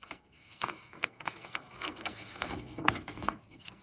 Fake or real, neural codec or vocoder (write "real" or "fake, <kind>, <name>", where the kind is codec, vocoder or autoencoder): fake, codec, SNAC